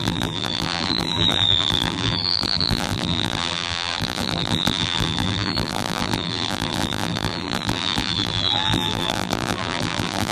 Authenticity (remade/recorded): remade